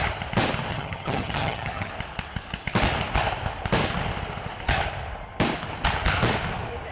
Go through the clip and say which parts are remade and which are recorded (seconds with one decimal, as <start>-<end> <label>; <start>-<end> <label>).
0.0-0.7 recorded; 0.7-1.9 remade; 1.9-6.9 recorded